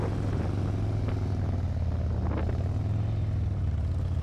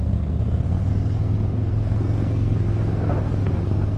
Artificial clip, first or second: second